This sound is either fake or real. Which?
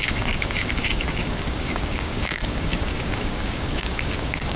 fake